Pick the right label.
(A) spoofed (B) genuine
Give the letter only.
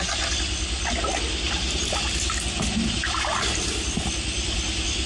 B